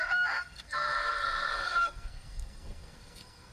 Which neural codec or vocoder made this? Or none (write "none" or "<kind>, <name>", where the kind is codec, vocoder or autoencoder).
codec, SNAC